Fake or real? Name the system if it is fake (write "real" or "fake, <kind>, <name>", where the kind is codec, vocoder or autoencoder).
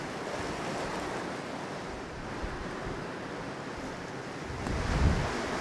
real